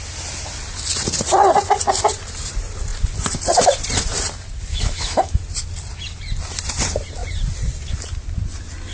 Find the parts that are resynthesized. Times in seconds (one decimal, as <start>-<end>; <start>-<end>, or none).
4.7-5.4